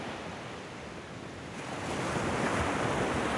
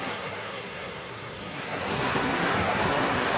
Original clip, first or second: first